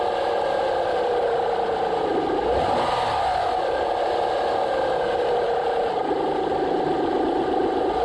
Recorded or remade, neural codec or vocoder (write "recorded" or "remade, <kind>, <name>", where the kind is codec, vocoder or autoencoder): recorded